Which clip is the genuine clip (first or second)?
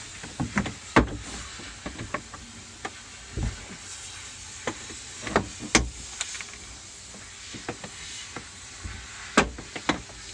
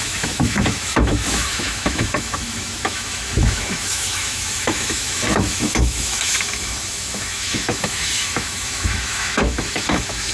first